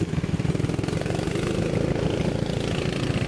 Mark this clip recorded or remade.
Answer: remade